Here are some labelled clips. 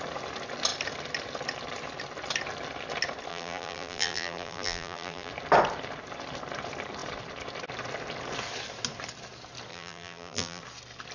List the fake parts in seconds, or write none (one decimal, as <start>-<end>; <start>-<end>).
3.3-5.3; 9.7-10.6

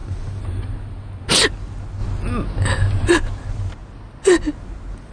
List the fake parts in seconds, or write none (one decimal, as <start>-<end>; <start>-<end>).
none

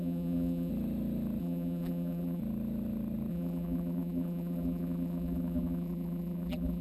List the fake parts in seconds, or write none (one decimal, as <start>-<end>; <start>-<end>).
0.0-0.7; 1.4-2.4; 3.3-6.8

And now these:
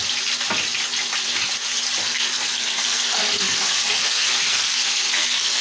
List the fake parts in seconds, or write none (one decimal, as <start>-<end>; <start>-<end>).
2.0-5.6